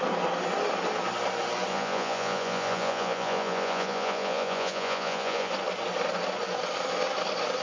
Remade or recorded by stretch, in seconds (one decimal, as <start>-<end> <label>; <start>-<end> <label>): 0.0-1.7 recorded; 1.7-5.5 remade; 5.5-7.6 recorded